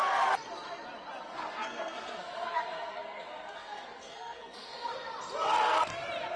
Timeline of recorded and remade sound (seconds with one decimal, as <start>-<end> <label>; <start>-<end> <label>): 0.0-1.2 recorded; 1.2-4.9 remade; 4.9-5.5 recorded; 5.5-5.9 remade; 5.9-6.4 recorded